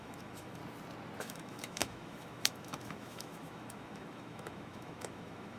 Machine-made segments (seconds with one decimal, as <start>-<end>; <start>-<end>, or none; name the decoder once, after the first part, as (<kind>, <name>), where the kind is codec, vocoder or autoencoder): 0.0-0.6 (autoencoder, DAC-VAE); 1.2-5.6